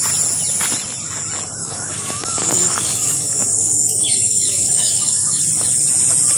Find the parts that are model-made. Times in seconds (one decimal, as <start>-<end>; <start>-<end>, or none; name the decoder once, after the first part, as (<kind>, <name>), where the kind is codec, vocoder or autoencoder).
1.6-5.4 (codec, DAC)